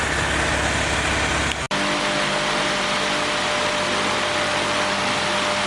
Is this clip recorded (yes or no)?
yes